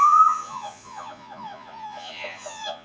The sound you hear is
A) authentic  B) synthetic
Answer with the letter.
B